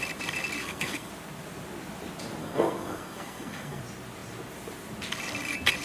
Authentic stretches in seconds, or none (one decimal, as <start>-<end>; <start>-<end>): 0.0-0.6; 1.1-2.4; 3.8-5.8